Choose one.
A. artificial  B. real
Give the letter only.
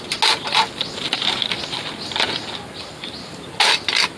B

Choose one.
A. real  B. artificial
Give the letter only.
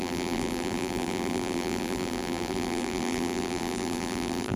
B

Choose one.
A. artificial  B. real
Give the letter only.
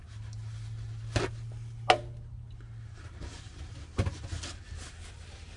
B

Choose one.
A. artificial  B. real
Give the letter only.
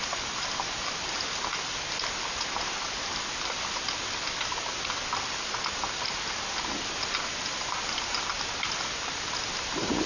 B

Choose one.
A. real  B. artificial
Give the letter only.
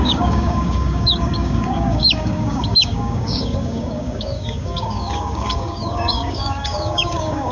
B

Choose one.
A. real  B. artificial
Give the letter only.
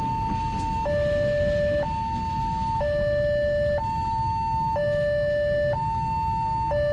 A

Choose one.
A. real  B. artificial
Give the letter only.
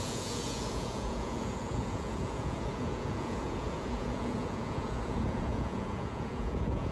B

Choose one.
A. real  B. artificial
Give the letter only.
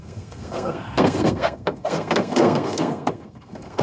B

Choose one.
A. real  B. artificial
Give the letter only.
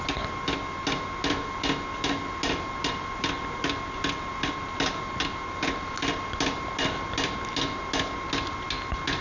A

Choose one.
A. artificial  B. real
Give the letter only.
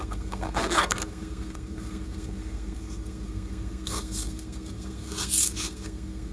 A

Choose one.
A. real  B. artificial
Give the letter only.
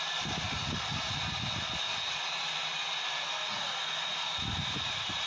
A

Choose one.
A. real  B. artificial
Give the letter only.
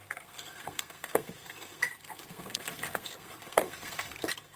B